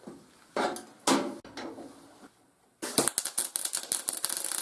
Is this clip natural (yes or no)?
yes